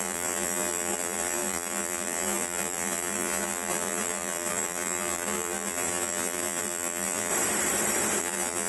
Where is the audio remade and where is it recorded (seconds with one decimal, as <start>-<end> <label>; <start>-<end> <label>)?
0.0-7.3 remade; 7.3-8.2 recorded; 8.2-8.7 remade